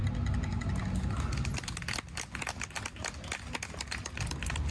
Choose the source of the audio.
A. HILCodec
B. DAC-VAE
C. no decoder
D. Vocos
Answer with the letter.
C